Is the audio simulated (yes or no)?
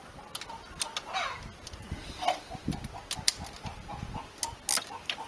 no